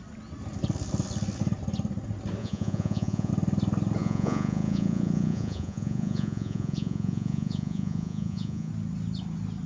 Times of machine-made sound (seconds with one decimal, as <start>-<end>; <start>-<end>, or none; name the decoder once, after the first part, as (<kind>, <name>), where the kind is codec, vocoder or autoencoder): 2.4-3.3 (vocoder, Vocos); 4.0-8.7